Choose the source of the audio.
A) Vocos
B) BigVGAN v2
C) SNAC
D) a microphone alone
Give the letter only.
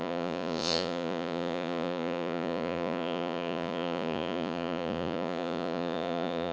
A